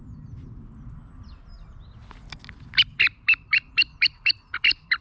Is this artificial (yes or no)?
no